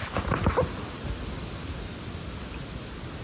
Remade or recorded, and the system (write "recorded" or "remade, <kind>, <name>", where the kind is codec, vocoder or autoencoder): recorded